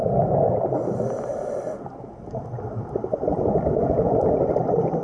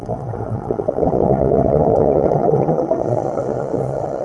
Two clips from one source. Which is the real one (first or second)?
first